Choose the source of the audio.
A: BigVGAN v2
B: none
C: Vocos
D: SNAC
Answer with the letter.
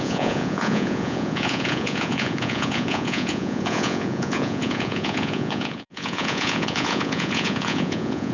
C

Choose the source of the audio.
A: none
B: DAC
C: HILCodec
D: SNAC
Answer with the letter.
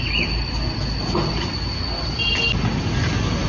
A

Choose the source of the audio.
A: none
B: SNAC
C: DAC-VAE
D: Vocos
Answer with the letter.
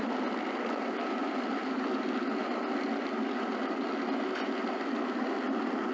A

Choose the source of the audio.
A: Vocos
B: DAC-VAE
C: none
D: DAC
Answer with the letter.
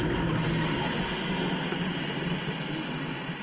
C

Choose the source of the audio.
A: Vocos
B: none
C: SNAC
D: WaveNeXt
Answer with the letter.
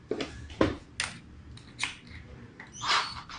B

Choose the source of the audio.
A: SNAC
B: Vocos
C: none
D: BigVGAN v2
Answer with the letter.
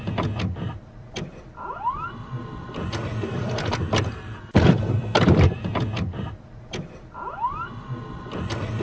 D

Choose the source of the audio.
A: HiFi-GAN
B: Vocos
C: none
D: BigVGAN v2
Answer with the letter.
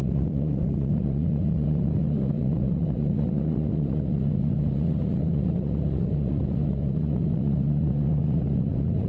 B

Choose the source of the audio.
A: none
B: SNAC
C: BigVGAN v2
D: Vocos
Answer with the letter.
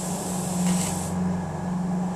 A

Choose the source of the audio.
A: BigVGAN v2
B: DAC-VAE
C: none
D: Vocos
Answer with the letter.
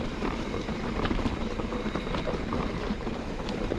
A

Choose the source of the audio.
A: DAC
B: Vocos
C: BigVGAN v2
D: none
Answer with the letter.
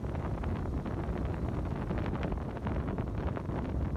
D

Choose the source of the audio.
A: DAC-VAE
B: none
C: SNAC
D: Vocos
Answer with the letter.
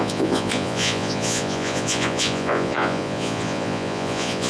D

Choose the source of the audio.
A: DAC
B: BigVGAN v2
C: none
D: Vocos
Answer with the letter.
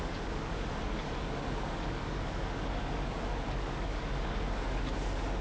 A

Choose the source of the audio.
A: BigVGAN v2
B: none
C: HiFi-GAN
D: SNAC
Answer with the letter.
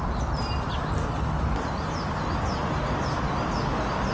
B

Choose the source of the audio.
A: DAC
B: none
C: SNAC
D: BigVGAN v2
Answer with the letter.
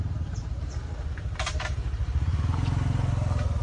B